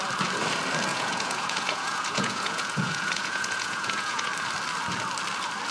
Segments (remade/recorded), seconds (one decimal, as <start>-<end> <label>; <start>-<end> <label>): 0.0-0.9 recorded; 0.9-4.3 remade; 4.3-5.7 recorded